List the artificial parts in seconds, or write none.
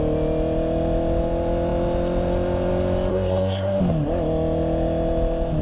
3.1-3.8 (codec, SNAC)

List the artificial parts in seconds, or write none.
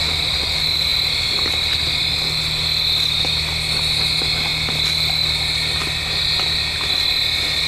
none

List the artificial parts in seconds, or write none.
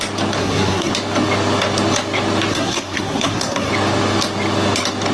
0.4-0.9 (codec, SNAC); 2.5-3.7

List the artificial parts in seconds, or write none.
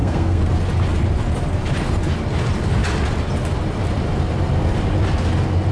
0.0-0.5 (codec, SNAC)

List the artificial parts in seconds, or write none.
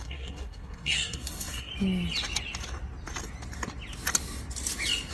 0.0-1.7 (codec, SNAC)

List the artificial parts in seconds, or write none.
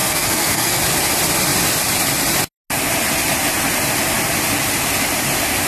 0.0-0.8 (codec, SNAC)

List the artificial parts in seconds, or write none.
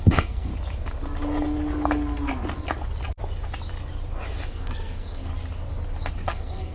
0.0-0.5 (codec, SNAC); 4.5-5.3; 6.1-6.7